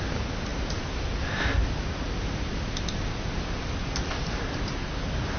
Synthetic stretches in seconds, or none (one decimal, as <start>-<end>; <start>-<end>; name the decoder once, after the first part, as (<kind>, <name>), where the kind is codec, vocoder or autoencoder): none